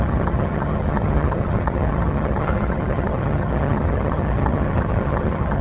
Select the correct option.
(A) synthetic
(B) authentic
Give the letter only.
A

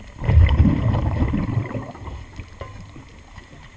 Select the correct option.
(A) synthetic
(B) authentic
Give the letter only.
B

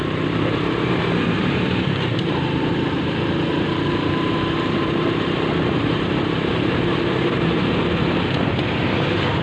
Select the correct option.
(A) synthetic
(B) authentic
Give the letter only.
A